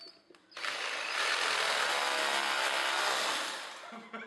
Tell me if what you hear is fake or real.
real